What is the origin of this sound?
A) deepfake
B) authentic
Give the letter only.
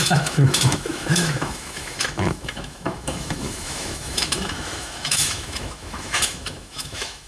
A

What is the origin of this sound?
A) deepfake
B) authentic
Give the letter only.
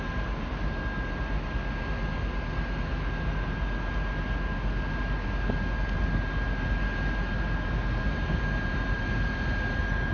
B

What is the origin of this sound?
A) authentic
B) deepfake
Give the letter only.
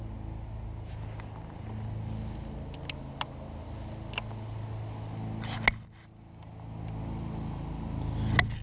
A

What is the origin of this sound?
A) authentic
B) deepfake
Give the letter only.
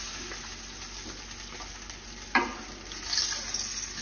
A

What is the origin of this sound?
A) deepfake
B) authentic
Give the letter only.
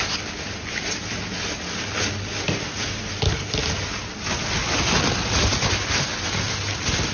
B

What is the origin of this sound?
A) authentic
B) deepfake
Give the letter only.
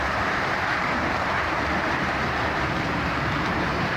B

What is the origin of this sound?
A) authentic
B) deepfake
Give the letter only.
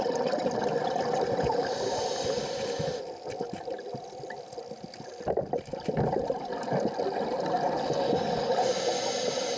A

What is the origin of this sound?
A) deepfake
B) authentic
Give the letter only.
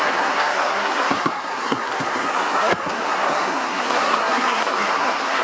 A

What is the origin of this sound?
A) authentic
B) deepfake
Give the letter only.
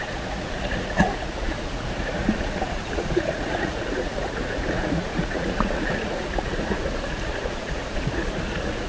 B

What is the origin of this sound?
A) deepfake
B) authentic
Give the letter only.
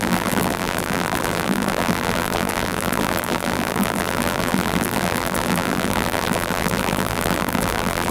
A